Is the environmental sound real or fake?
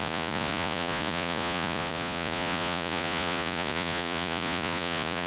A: fake